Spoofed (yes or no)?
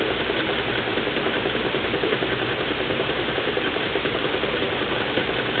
yes